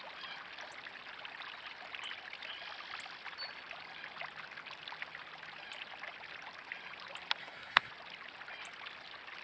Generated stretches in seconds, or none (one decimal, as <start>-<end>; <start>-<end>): 7.4-7.9